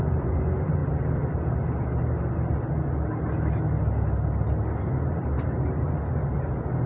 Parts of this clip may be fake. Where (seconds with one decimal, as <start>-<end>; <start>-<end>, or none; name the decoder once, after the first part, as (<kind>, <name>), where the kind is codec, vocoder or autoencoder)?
none